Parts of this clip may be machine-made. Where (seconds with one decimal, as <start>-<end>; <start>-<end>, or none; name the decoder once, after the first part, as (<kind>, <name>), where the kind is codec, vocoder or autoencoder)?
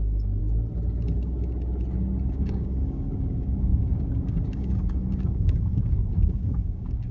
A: 0.0-0.4 (codec, DAC); 2.3-7.1